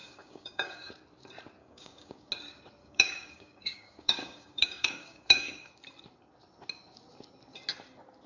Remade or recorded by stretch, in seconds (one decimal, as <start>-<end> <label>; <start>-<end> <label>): 0.0-0.9 remade; 0.9-1.6 recorded; 1.6-2.3 remade; 2.3-2.8 recorded; 2.8-5.7 remade; 5.7-8.3 recorded